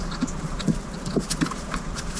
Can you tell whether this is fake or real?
real